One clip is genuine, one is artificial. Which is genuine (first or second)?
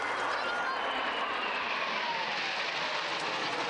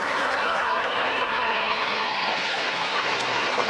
first